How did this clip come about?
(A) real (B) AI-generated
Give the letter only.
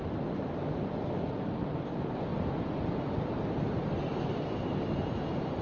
A